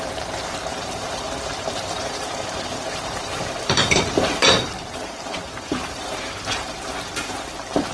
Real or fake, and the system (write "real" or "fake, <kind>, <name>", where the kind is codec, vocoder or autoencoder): fake, vocoder, BigVGAN v2